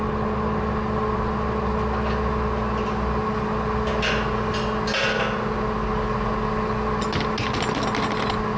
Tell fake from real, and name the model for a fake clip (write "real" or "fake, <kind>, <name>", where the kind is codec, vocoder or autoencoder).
real